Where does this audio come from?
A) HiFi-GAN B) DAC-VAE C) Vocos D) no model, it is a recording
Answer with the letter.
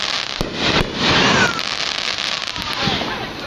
D